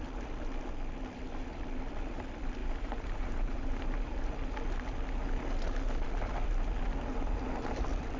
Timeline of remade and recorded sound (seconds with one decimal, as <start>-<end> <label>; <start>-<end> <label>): 0.0-2.6 recorded; 2.6-4.3 remade; 4.3-8.2 recorded